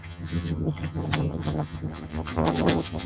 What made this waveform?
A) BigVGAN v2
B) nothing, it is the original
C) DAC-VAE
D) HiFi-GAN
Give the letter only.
D